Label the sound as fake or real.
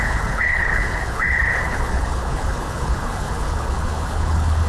fake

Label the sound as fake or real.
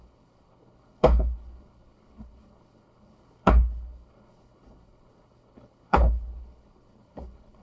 fake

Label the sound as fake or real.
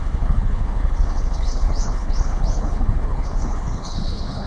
fake